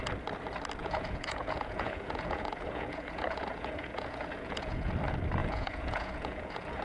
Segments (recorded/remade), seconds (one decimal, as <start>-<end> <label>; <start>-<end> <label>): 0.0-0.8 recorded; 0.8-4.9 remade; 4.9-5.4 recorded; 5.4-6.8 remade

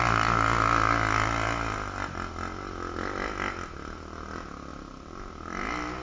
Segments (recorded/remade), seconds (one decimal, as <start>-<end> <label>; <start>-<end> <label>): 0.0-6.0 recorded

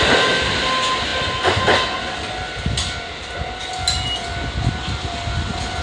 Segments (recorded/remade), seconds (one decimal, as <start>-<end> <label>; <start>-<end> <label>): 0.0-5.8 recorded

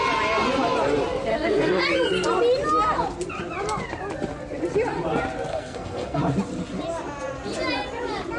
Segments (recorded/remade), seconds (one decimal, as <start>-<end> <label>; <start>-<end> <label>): 0.0-1.3 recorded; 1.3-1.8 remade; 1.8-5.5 recorded; 5.5-6.2 remade; 6.2-8.4 recorded